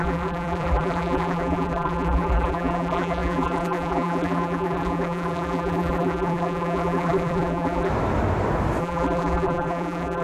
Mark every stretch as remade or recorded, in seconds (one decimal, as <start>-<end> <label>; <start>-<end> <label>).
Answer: 0.0-7.9 remade; 7.9-8.8 recorded; 8.8-10.2 remade